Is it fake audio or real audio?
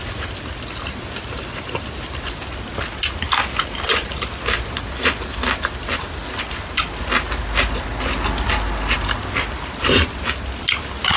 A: real